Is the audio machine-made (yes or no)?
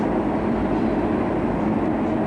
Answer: no